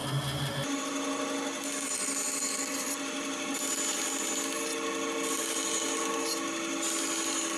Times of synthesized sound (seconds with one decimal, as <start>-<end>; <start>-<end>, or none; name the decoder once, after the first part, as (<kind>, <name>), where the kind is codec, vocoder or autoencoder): none